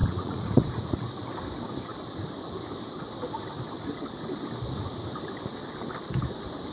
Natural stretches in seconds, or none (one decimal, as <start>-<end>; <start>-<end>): 1.2-6.7